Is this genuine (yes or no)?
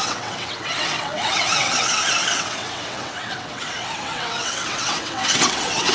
no